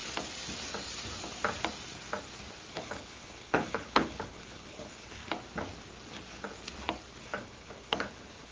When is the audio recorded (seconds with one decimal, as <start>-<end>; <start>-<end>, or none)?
0.0-2.7; 5.2-7.2